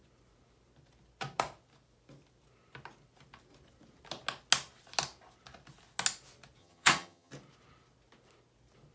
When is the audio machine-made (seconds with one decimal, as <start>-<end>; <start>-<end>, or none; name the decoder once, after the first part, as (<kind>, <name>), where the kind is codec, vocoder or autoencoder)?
6.6-7.3 (vocoder, HiFi-GAN)